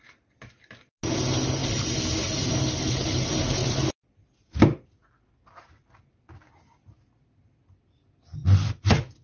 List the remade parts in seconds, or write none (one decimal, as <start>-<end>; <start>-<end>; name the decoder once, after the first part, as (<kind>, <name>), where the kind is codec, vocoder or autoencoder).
none